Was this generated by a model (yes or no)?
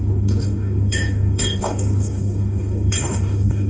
yes